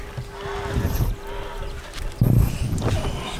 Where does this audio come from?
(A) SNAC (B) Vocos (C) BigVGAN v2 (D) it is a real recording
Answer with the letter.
D